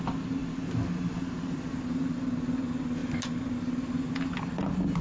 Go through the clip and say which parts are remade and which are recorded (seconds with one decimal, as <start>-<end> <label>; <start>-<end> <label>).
0.0-5.0 recorded